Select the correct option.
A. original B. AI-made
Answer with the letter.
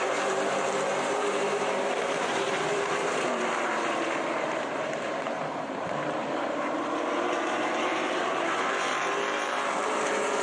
B